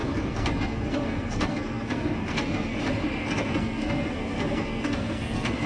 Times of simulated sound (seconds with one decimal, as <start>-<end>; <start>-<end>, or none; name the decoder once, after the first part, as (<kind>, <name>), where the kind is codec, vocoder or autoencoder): 0.0-2.8 (codec, SNAC); 3.2-5.7